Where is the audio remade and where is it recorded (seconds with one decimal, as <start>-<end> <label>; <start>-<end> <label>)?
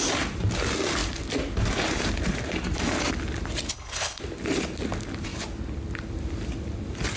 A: 0.0-3.7 recorded; 3.7-4.2 remade; 4.2-7.2 recorded